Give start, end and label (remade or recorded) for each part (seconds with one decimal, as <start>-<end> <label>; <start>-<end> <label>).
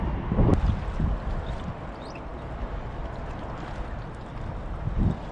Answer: 0.0-0.5 recorded; 0.5-1.7 remade; 1.7-5.3 recorded